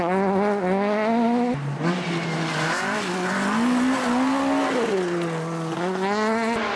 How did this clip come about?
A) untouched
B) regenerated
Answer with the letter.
A